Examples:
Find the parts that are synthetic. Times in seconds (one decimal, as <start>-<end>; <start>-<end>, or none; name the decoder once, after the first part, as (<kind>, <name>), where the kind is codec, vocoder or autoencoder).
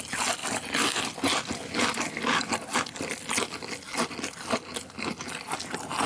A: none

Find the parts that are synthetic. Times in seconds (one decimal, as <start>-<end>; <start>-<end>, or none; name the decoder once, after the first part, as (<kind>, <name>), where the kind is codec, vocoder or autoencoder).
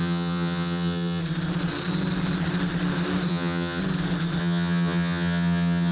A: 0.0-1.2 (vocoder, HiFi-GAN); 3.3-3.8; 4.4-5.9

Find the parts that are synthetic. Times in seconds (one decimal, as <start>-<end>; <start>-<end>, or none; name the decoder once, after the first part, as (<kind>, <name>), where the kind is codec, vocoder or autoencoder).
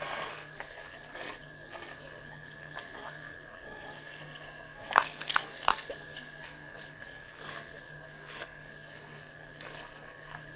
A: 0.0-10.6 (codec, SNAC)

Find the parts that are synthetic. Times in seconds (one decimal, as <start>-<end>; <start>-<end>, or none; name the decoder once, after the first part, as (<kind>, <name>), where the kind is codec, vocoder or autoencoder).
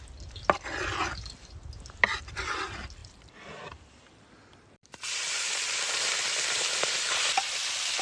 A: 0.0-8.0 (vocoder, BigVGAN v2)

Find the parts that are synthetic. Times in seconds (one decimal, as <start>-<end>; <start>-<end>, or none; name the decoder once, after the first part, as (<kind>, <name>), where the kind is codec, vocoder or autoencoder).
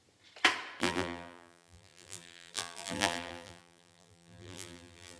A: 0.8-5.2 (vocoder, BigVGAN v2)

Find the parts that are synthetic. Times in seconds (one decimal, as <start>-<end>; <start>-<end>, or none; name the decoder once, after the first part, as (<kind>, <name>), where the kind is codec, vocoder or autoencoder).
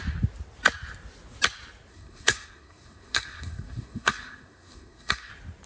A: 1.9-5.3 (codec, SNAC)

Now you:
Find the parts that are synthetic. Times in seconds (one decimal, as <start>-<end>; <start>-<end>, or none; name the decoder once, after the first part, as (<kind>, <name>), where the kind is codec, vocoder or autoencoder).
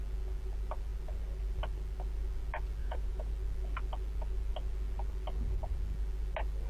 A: 2.8-3.3 (vocoder, Vocos)